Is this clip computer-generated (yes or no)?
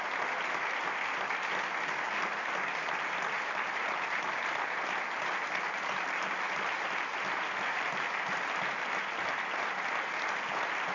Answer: no